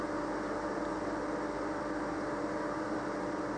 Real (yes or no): yes